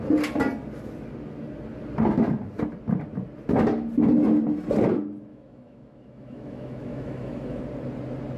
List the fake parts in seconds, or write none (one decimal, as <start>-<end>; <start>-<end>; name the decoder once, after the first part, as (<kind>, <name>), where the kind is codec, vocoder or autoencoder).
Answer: 5.3-7.6 (autoencoder, DAC-VAE)